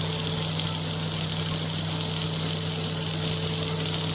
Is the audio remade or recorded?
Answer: recorded